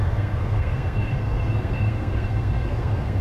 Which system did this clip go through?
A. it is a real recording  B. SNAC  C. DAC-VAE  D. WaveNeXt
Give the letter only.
B